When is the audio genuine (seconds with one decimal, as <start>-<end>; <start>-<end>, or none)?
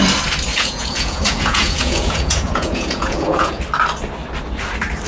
0.0-0.5; 3.6-5.1